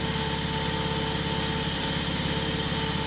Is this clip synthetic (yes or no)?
no